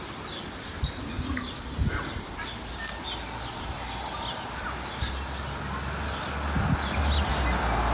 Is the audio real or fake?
real